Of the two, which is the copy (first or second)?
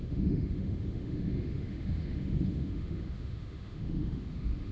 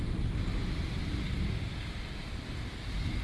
first